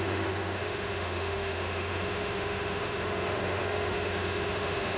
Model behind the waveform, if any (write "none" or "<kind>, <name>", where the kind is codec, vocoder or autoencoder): autoencoder, DAC-VAE